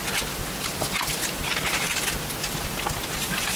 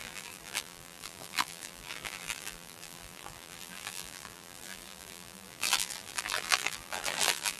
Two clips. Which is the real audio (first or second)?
first